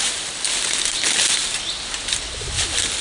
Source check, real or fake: real